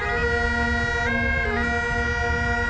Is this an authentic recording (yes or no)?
yes